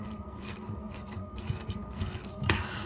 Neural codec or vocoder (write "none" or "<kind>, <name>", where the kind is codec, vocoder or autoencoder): codec, SNAC